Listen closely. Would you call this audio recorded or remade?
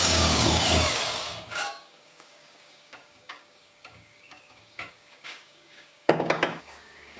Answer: remade